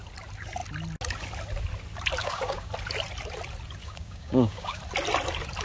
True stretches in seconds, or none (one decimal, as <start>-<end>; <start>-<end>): 0.0-2.2; 2.7-3.8; 4.8-5.6